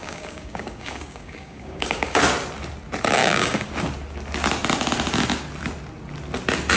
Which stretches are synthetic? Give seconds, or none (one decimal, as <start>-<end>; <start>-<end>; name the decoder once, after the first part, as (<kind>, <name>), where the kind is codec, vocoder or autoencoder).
0.0-2.2 (codec, DAC); 3.2-3.7